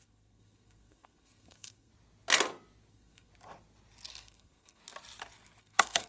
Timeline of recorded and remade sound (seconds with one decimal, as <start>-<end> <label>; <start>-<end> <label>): 0.0-1.9 remade; 1.9-2.9 recorded; 2.9-3.3 remade; 3.3-4.1 recorded; 4.1-4.8 remade; 4.8-5.6 recorded; 5.6-6.1 remade